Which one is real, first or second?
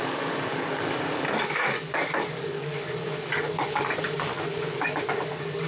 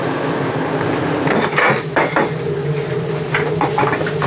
second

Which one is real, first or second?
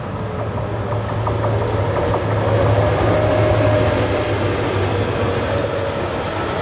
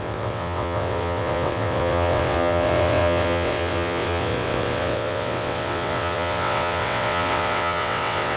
first